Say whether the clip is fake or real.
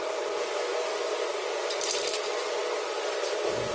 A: real